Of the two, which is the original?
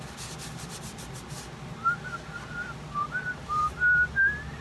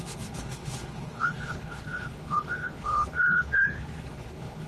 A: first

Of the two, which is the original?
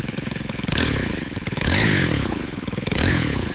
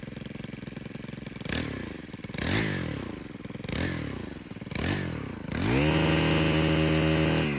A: second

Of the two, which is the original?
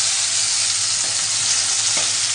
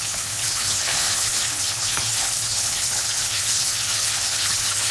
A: first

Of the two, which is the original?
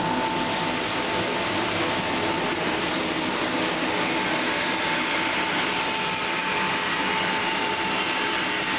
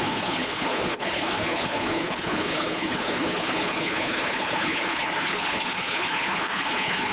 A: first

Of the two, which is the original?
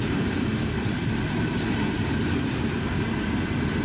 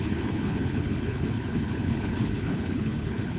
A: first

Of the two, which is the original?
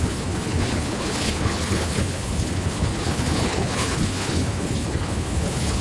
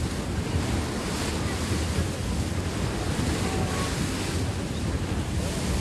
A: second